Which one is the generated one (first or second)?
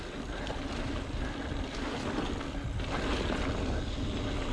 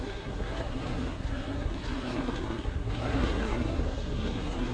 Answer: second